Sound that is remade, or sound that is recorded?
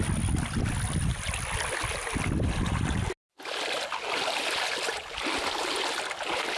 recorded